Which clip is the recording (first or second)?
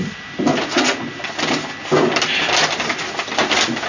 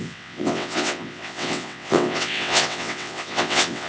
first